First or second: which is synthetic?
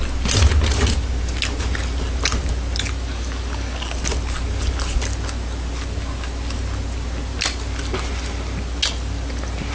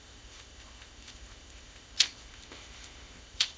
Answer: second